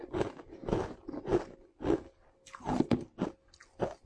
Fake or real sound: real